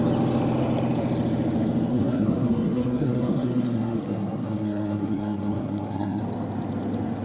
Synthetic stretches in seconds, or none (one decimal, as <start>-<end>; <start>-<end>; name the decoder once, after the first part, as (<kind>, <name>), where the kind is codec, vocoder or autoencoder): 1.9-6.2 (codec, SNAC)